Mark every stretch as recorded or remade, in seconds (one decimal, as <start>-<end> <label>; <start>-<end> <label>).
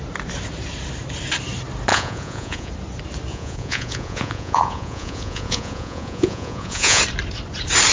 0.0-1.9 recorded; 1.9-2.7 remade; 2.7-3.3 recorded; 3.3-7.0 remade; 7.0-7.9 recorded